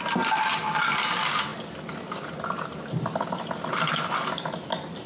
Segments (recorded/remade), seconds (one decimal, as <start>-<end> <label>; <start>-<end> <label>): 0.0-5.1 recorded